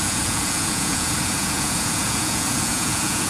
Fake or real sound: fake